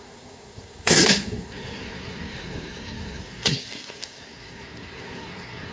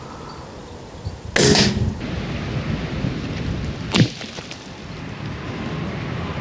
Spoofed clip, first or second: first